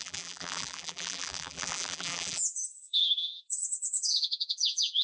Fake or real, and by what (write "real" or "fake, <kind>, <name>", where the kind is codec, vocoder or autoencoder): fake, vocoder, BigVGAN v2